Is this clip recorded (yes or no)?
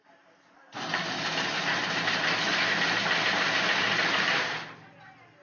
yes